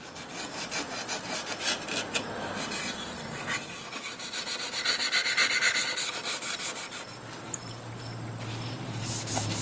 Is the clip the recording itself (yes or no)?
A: yes